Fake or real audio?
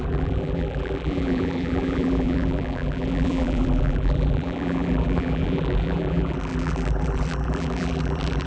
fake